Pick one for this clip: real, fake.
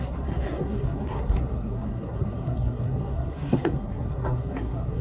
fake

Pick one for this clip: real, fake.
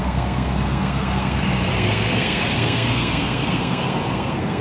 fake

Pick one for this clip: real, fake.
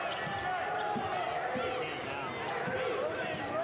real